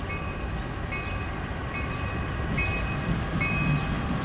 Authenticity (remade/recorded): recorded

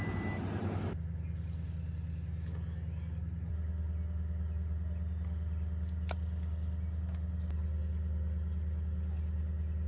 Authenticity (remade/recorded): recorded